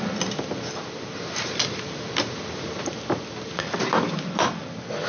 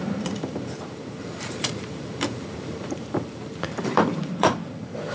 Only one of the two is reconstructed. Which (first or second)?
second